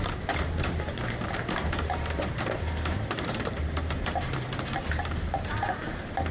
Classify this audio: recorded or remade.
remade